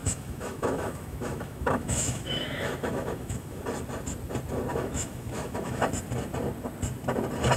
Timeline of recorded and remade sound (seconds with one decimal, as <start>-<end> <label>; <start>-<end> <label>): 0.0-3.6 remade; 3.6-4.7 recorded; 4.7-5.8 remade; 5.8-7.6 recorded

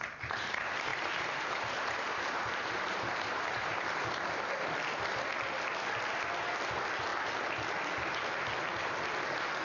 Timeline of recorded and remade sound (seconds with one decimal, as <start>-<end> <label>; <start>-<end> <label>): 0.0-0.9 recorded; 0.9-4.0 remade; 4.0-9.6 recorded